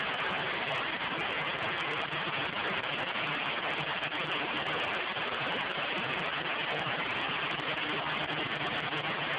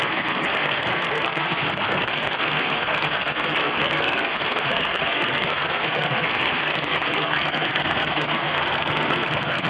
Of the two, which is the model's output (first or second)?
second